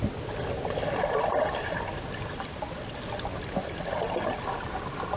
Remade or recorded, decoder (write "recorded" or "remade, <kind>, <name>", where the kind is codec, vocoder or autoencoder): recorded